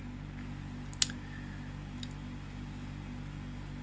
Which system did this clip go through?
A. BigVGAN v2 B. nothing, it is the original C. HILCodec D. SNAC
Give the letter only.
B